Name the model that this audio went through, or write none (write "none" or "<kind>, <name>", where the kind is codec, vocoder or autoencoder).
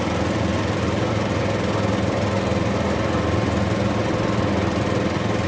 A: none